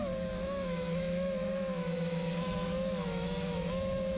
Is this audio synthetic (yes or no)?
yes